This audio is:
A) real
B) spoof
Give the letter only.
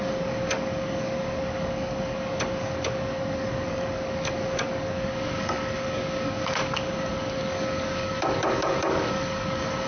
B